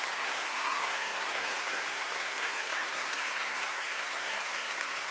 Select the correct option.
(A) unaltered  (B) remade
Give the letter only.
B